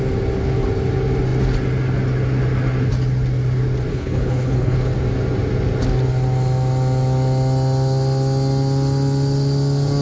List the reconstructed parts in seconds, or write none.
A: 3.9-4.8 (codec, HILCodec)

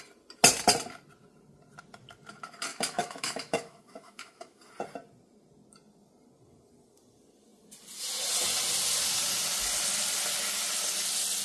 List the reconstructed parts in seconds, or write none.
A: 2.7-4.6 (autoencoder, DAC-VAE)

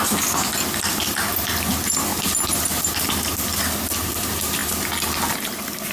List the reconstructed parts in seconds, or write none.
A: none